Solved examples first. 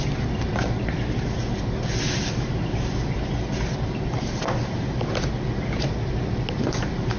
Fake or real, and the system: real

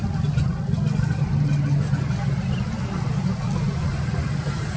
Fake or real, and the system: real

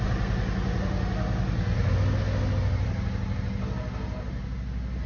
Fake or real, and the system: real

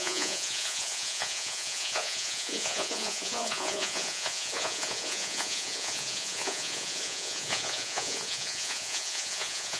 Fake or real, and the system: fake, vocoder, Vocos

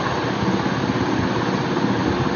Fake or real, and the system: real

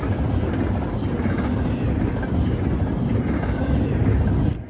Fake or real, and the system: real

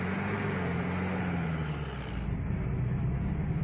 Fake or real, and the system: real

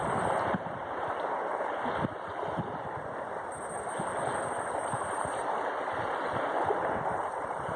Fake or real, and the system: real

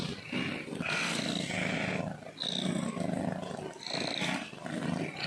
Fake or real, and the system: real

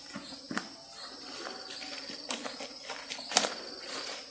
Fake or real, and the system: real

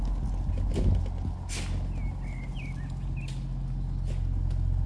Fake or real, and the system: real